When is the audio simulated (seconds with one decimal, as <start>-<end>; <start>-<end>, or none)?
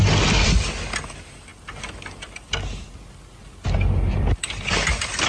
none